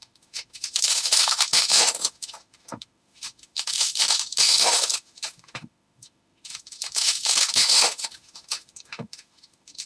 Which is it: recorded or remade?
remade